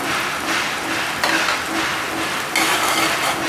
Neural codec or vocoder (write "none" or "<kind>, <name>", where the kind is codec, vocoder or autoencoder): none